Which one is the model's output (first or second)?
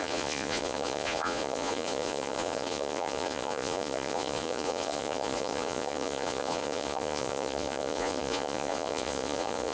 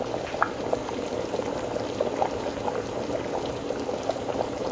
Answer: first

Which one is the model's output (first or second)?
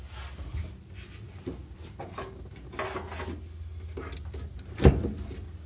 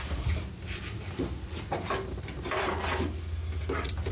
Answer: second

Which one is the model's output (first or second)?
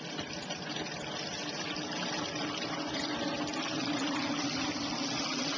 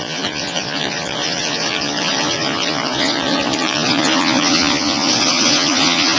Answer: second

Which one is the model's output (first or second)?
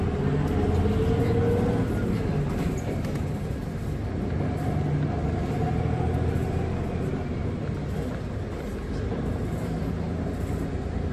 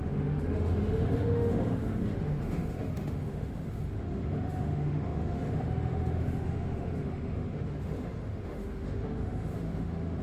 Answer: second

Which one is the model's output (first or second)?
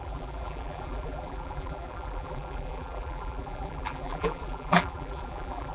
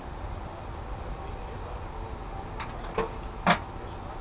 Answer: first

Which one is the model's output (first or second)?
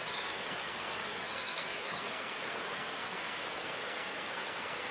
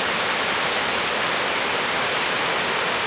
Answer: first